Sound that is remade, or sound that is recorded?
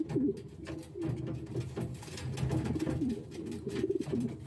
recorded